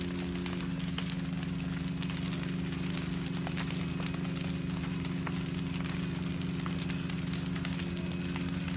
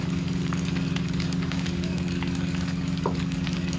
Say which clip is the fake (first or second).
second